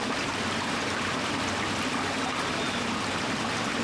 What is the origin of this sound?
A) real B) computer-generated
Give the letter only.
A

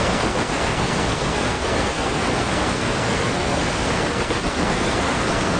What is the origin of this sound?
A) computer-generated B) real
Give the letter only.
A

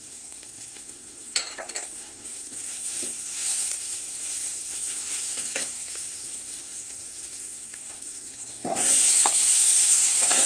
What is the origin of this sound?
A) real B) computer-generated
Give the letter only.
B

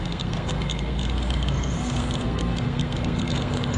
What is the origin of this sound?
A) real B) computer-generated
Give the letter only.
B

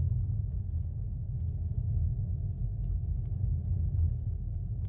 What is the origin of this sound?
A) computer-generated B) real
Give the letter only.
B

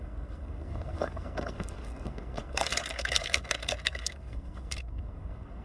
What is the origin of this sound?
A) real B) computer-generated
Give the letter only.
B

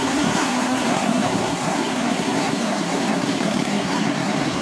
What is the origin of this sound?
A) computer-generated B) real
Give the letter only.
A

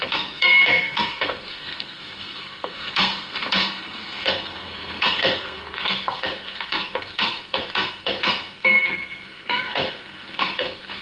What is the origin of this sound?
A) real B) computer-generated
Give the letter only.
B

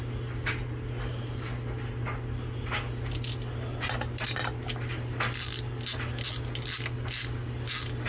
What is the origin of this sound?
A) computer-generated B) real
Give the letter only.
B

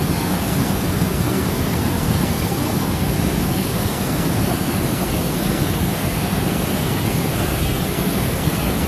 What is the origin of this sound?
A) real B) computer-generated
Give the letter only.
B